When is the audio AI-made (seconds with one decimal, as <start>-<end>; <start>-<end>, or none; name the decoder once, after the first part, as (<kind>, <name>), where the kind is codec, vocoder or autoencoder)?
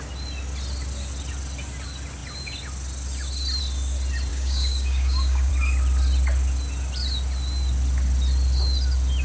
4.3-5.5 (codec, DAC)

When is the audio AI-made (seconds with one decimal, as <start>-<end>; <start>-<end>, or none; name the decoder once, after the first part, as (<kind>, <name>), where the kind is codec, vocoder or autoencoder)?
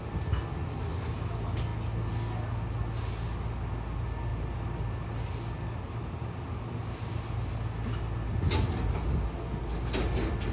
none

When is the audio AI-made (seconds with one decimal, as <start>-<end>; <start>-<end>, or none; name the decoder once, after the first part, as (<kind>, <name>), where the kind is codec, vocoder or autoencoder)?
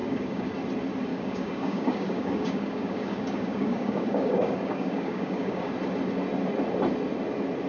0.0-0.5 (codec, DAC); 1.1-5.7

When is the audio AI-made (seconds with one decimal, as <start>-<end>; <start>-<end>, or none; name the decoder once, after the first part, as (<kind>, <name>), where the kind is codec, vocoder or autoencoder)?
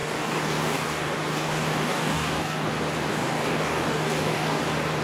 0.0-2.7 (codec, DAC); 3.1-4.6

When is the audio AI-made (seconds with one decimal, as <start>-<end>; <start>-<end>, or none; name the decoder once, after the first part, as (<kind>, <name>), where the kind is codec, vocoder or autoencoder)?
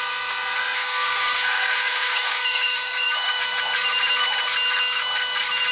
0.8-3.4 (codec, DAC)